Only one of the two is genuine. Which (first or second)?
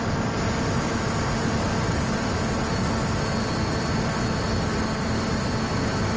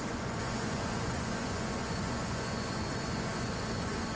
first